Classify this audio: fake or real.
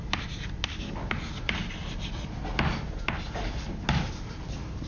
real